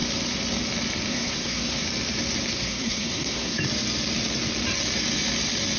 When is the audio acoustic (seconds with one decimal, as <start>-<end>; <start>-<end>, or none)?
0.0-1.1; 1.8-2.5; 3.6-5.8